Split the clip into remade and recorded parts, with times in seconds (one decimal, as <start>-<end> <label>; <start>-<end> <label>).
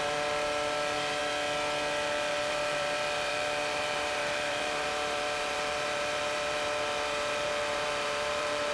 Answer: 0.0-1.2 remade; 1.2-1.9 recorded; 1.9-8.7 remade